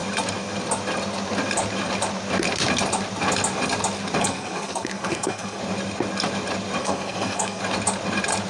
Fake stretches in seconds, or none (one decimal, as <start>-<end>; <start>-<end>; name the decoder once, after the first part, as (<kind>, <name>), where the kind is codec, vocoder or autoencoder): 4.2-5.6 (codec, SNAC); 6.8-7.6